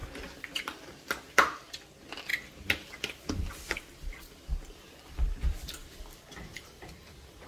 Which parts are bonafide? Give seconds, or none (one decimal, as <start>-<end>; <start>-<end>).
2.3-4.8